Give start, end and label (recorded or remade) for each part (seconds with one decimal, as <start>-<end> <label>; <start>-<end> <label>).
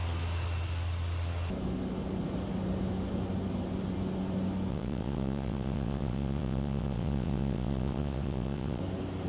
0.0-4.7 recorded; 4.7-8.8 remade; 8.8-9.3 recorded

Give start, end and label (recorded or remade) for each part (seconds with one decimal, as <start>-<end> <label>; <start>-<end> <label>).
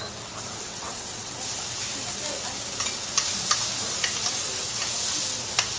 0.0-0.7 recorded; 0.7-1.3 remade; 1.3-5.8 recorded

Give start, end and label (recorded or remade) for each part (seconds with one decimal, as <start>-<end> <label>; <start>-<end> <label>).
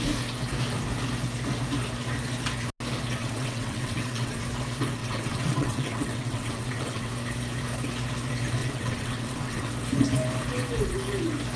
0.0-3.2 recorded; 3.2-4.4 remade; 4.4-5.0 recorded; 5.0-7.1 remade; 7.1-8.6 recorded; 8.6-9.7 remade; 9.7-11.6 recorded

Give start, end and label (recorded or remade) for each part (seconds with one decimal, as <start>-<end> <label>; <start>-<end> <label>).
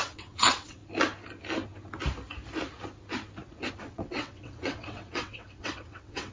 0.0-0.8 remade; 0.8-3.7 recorded; 3.7-6.3 remade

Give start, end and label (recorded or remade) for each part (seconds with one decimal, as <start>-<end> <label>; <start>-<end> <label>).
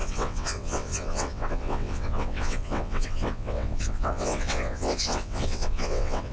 0.0-6.3 remade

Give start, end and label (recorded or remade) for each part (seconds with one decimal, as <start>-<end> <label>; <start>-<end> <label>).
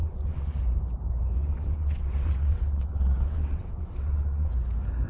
0.0-0.6 remade; 0.6-1.4 recorded; 1.4-4.5 remade; 4.5-5.1 recorded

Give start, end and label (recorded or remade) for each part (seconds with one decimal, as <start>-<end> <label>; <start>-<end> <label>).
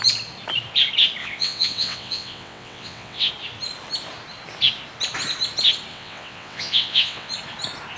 0.0-1.2 recorded; 1.2-3.3 remade; 3.3-5.9 recorded; 5.9-7.3 remade; 7.3-8.0 recorded